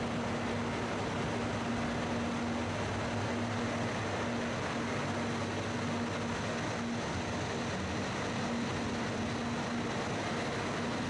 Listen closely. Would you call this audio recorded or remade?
recorded